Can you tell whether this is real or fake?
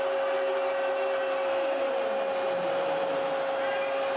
real